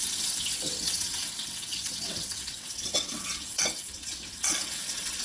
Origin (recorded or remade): remade